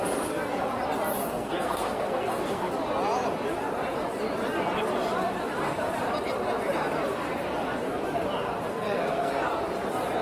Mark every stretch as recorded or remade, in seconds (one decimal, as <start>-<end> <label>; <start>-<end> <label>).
0.0-1.2 recorded; 1.2-2.7 remade; 2.7-8.7 recorded; 8.7-9.3 remade; 9.3-10.2 recorded